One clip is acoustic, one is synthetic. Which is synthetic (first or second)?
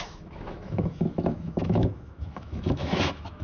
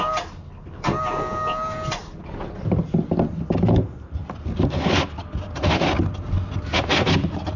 first